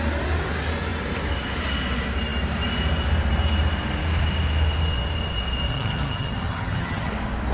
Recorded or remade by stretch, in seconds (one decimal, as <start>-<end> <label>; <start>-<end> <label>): 0.0-5.7 recorded; 5.7-7.1 remade; 7.1-7.5 recorded